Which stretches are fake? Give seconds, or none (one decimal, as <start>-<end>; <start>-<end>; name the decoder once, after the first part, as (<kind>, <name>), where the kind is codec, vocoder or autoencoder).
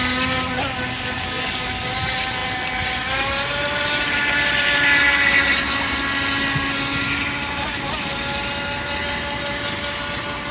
none